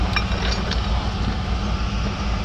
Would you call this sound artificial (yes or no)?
no